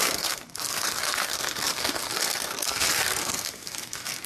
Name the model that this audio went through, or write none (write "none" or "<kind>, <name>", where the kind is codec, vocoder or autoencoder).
codec, SNAC